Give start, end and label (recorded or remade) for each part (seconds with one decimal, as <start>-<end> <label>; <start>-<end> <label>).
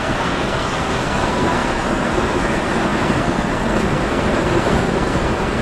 0.0-5.6 remade